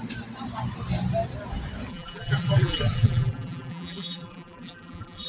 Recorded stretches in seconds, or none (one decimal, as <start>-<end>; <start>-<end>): 0.0-1.9